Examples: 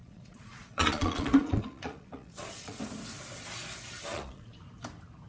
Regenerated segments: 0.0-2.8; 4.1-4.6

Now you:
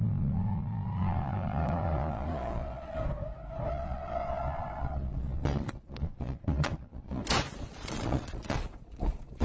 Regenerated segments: 0.0-3.0; 3.7-7.2; 7.7-9.4

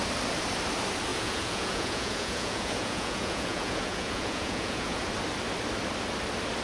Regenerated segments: 1.1-5.1

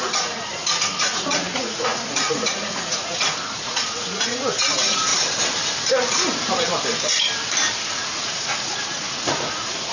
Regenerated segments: 0.0-5.1; 7.9-9.9

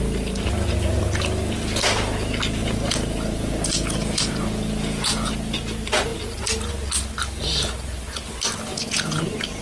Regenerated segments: 2.6-5.3; 8.7-9.2

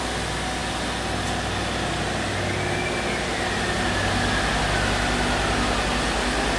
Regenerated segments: none

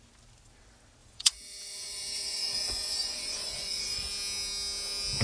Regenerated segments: 1.0-4.1

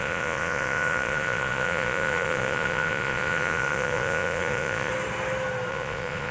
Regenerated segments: 0.0-4.9; 5.7-6.3